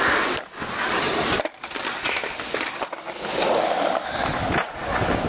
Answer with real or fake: real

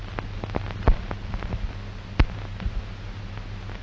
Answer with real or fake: real